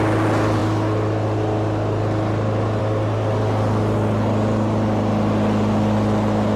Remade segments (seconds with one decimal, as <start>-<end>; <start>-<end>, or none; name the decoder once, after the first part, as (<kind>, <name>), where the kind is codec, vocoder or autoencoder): none